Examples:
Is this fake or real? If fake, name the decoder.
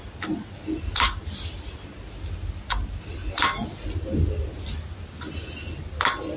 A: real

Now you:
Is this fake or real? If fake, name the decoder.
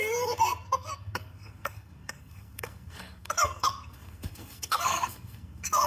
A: fake, codec, SNAC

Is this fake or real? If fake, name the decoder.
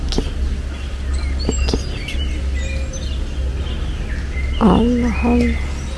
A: real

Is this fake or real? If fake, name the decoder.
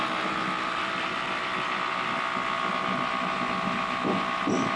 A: real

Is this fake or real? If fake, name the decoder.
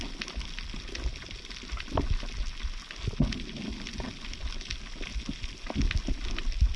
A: real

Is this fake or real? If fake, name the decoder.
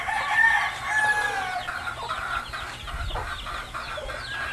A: real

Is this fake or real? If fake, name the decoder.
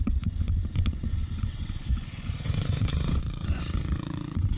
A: fake, vocoder, Vocos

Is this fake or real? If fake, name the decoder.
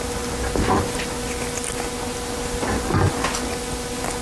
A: real